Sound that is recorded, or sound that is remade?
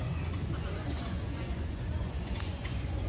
remade